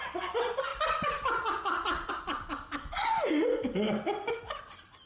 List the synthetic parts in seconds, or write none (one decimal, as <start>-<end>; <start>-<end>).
none